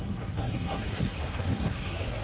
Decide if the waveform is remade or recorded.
remade